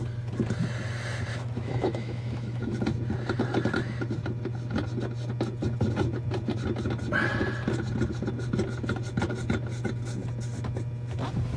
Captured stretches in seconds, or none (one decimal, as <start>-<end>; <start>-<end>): 0.0-1.3; 2.8-11.6